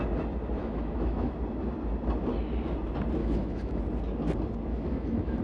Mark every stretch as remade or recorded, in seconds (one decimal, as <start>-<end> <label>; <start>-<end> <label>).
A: 0.0-0.6 recorded; 0.6-1.3 remade; 1.3-3.2 recorded; 3.2-3.8 remade; 3.8-4.7 recorded; 4.7-5.4 remade